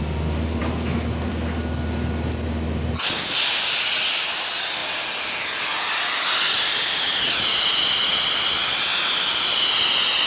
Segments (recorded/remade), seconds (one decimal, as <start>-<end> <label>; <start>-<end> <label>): 0.0-10.3 recorded